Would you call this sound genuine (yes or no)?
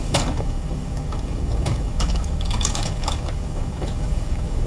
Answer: no